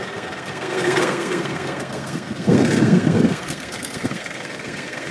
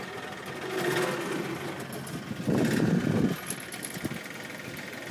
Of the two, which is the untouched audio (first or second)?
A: second